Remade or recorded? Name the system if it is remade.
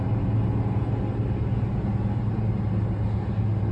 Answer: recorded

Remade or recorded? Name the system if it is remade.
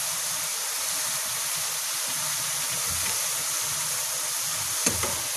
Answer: remade, vocoder, BigVGAN v2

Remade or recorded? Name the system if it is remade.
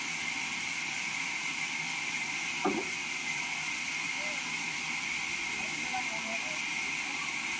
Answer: remade, vocoder, BigVGAN v2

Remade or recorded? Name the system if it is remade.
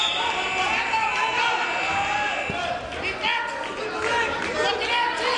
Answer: recorded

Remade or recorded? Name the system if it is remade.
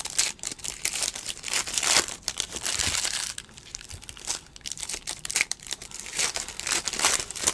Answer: remade, vocoder, BigVGAN v2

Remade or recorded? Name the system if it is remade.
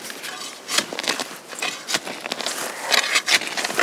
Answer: recorded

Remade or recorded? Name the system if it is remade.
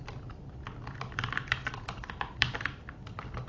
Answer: remade, vocoder, BigVGAN v2